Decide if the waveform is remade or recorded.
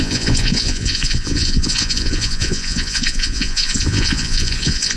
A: remade